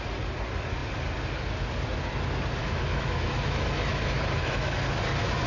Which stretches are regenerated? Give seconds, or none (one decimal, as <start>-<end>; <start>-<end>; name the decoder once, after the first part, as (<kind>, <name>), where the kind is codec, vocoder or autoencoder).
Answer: 2.6-4.8 (autoencoder, DAC-VAE)